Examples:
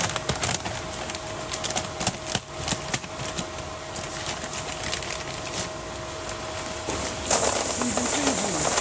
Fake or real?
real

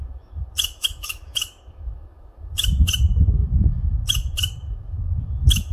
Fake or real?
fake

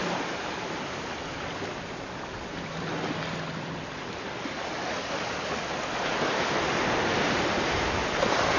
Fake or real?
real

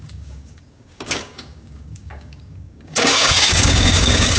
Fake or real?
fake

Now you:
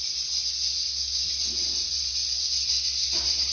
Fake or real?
real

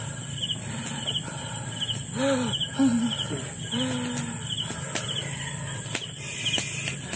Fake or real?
real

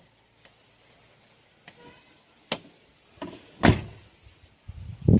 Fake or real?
real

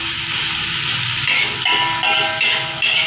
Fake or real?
real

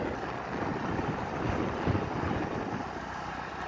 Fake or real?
real